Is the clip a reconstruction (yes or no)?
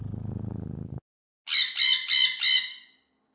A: no